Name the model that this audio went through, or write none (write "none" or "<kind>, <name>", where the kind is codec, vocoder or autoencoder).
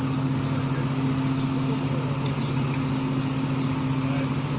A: none